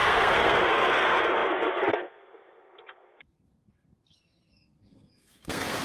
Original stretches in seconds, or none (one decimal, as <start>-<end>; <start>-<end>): none